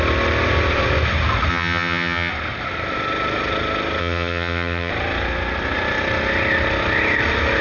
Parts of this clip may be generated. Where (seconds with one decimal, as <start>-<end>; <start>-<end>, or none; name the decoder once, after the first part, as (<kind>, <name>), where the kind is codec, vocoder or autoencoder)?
1.5-2.3 (vocoder, HiFi-GAN); 4.0-4.9

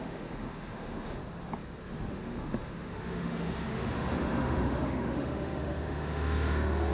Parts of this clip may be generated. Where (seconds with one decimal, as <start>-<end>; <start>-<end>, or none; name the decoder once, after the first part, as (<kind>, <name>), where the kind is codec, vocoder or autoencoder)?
0.0-1.2 (autoencoder, DAC-VAE); 2.1-6.9

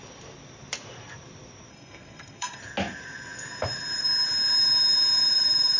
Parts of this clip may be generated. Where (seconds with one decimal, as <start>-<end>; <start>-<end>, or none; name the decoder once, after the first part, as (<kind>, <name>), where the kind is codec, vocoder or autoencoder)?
1.7-2.6 (codec, SNAC)

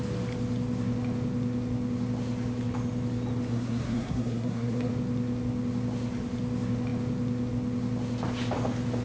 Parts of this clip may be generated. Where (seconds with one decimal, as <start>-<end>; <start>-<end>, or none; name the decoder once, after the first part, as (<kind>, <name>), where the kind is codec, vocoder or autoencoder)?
3.5-4.9 (codec, SNAC)

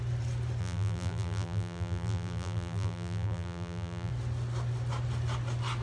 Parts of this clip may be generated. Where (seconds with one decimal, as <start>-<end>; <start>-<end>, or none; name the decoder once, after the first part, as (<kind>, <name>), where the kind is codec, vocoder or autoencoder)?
0.6-4.1 (vocoder, BigVGAN v2)